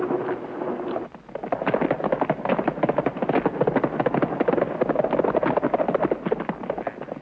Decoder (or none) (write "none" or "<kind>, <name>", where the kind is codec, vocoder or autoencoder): none